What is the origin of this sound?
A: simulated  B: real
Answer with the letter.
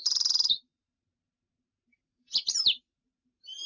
A